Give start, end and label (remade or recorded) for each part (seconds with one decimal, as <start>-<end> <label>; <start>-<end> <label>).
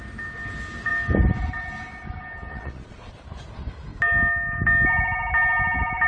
0.0-2.5 recorded; 2.5-3.1 remade; 3.1-6.1 recorded